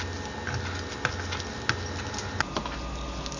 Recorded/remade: recorded